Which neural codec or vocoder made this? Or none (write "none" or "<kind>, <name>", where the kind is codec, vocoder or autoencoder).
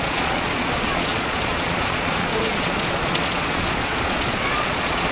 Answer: vocoder, Vocos